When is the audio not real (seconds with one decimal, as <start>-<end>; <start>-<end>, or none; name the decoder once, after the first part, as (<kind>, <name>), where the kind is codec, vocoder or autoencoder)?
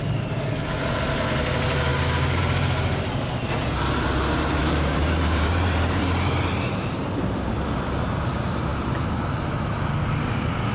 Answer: 4.6-7.6 (vocoder, BigVGAN v2)